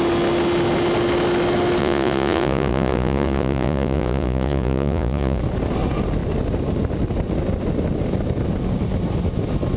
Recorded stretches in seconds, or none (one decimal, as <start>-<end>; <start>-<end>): 0.0-1.8; 5.4-9.8